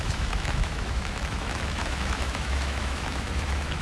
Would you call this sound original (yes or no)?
no